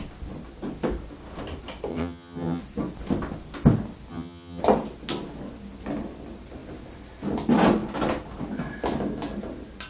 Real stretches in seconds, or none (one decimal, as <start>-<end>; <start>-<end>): 0.0-1.9; 2.6-4.1; 4.6-9.9